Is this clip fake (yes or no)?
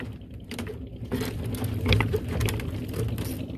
no